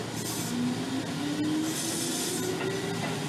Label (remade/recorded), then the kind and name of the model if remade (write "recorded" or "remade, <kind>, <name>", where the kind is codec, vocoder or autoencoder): recorded